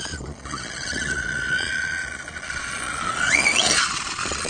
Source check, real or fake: fake